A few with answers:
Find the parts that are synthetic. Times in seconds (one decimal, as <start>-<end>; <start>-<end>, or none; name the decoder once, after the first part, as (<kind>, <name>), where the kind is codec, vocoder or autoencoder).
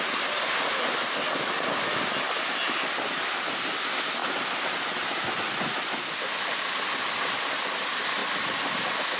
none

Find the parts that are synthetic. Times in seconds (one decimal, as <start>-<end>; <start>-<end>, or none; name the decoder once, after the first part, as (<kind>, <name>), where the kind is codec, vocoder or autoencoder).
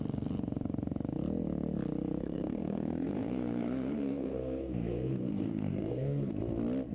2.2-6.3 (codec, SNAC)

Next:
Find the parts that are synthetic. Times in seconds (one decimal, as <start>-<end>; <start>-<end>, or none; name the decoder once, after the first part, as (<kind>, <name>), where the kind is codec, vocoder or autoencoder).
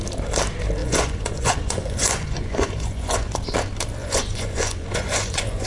0.8-3.3 (vocoder, Vocos); 4.0-5.7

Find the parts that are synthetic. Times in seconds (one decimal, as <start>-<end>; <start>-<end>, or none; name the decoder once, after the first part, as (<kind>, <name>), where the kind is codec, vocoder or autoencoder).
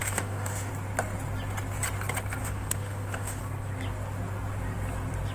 0.0-0.7 (autoencoder, DAC-VAE); 2.4-3.4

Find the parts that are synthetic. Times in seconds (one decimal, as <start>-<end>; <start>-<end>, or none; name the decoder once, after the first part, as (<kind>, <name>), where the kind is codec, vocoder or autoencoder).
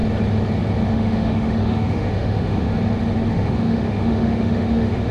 0.9-2.7 (autoencoder, DAC-VAE); 3.3-5.1